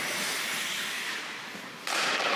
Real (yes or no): yes